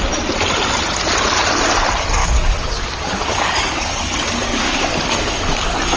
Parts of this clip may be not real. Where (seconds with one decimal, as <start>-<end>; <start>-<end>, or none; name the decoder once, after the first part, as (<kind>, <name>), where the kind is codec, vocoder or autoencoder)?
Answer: 2.2-6.0 (codec, DAC)